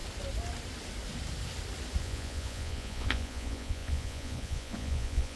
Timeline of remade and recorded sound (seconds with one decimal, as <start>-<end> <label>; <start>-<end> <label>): 0.0-2.0 recorded; 2.0-5.4 remade